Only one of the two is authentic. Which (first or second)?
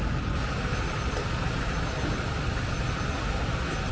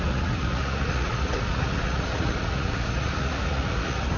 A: first